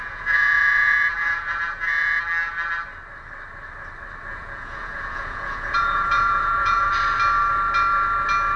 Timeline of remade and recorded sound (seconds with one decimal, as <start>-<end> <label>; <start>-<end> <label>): 0.0-2.2 remade; 2.2-4.3 recorded; 4.3-6.9 remade; 6.9-8.6 recorded